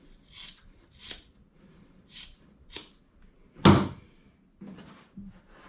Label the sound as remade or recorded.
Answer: recorded